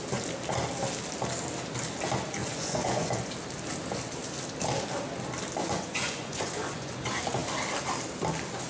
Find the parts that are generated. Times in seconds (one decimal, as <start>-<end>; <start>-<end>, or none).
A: 2.4-3.3; 5.6-6.9